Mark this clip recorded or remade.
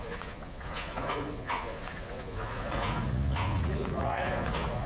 remade